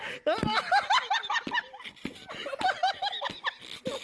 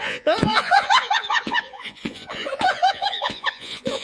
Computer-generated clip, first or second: second